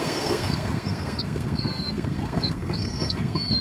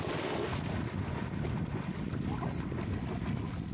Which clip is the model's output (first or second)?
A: first